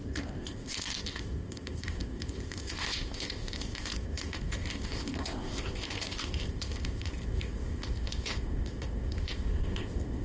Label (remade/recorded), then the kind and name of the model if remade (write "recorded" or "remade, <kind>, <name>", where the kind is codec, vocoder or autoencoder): remade, codec, ZipCodec